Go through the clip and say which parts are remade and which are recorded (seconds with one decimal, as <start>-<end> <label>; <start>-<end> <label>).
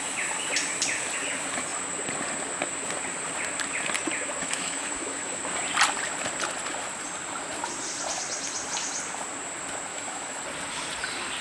0.0-4.4 recorded; 4.4-5.4 remade; 5.4-9.9 recorded; 9.9-10.4 remade; 10.4-11.4 recorded